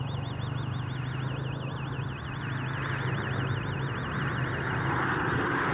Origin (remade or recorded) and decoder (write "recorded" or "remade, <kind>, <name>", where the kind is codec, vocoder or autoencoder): recorded